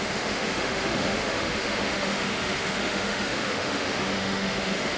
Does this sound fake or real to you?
fake